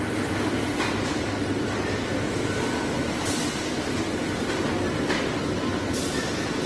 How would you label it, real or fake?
real